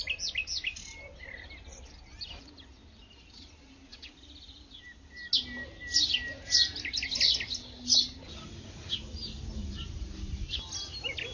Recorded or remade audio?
recorded